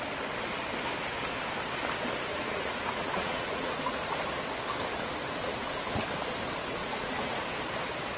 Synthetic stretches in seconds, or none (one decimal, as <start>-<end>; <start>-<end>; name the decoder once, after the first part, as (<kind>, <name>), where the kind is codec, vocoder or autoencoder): 2.3-4.1 (vocoder, Vocos); 5.4-6.0; 6.8-7.4